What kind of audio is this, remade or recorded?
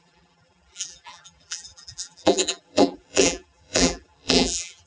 remade